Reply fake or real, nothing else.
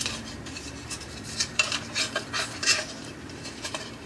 fake